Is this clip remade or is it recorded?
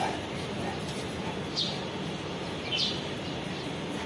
recorded